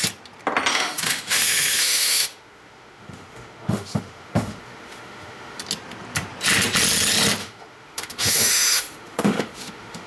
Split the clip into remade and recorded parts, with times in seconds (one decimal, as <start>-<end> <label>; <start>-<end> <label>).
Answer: 0.0-0.7 recorded; 0.7-5.6 remade; 5.6-7.4 recorded; 7.4-10.1 remade

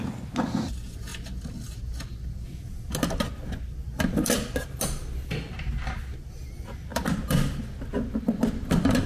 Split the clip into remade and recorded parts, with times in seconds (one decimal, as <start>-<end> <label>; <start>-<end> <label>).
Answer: 0.0-9.1 recorded

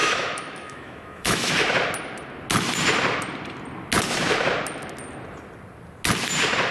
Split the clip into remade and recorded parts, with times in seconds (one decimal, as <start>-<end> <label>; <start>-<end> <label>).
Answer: 0.0-1.5 remade; 1.5-6.7 recorded

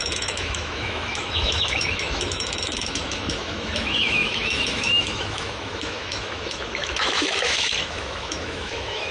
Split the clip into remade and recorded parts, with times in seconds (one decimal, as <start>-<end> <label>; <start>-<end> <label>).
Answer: 0.0-9.1 remade

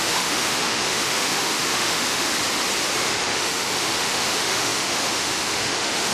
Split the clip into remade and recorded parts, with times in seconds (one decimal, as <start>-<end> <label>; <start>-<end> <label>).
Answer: 0.0-2.3 remade; 2.3-3.0 recorded; 3.0-6.1 remade

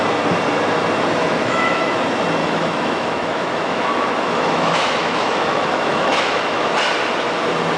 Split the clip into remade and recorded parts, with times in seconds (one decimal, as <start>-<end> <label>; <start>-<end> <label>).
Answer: 0.0-1.2 recorded; 1.2-1.9 remade; 1.9-2.4 recorded; 2.4-6.7 remade; 6.7-7.8 recorded

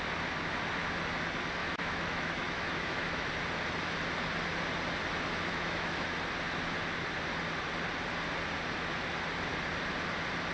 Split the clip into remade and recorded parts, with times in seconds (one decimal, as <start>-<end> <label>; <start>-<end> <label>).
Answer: 0.0-1.6 recorded; 1.6-3.3 remade; 3.3-5.5 recorded; 5.5-6.2 remade; 6.2-10.5 recorded

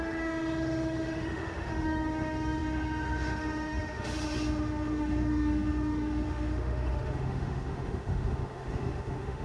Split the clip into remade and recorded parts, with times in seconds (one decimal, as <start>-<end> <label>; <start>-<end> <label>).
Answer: 0.0-9.4 remade